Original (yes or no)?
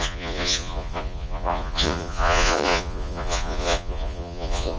no